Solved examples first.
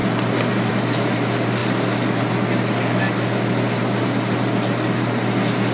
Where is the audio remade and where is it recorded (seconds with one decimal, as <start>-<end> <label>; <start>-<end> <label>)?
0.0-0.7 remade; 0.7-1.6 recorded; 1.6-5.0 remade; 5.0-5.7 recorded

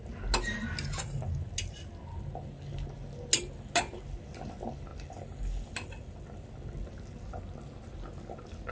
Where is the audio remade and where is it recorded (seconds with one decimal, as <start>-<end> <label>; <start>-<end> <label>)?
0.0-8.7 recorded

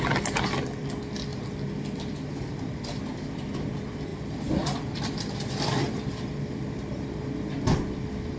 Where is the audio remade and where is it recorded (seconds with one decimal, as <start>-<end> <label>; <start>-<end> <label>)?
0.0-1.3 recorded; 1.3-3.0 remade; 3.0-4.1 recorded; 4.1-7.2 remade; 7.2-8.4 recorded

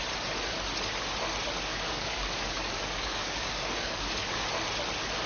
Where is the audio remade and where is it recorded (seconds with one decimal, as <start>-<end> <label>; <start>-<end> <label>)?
0.0-1.7 recorded; 1.7-4.3 remade; 4.3-5.3 recorded

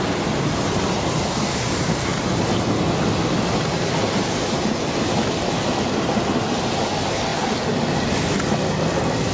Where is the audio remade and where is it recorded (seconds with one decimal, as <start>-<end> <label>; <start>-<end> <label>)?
0.0-9.3 recorded